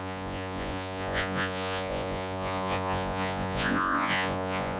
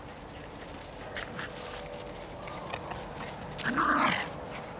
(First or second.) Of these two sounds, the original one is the second